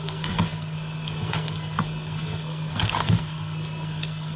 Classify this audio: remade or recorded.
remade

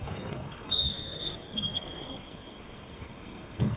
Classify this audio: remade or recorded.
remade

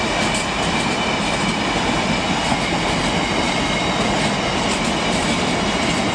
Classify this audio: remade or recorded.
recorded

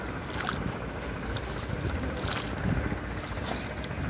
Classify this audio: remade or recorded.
recorded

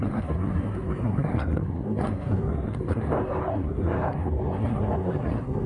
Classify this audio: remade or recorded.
remade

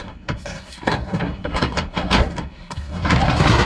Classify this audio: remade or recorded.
remade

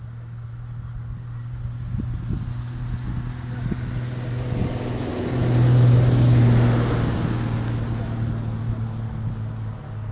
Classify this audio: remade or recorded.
recorded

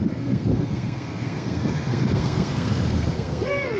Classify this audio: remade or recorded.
remade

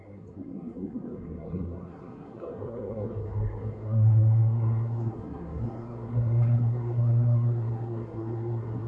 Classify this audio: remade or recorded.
remade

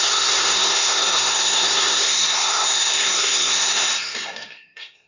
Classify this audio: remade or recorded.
remade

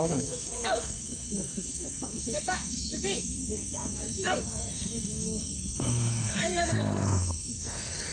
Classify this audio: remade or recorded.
remade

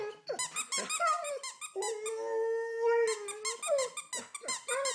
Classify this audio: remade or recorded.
recorded